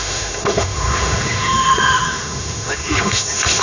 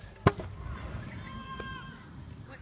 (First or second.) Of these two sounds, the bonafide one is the second